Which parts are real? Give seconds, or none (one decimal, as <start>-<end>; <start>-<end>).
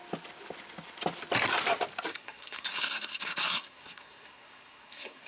0.0-2.1